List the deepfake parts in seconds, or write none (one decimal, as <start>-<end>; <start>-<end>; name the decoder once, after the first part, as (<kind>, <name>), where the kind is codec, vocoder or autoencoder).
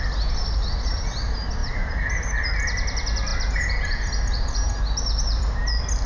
none